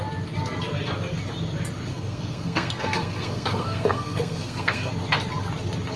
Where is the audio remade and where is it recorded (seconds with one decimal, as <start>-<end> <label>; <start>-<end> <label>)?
0.0-1.9 recorded; 1.9-4.9 remade; 4.9-6.0 recorded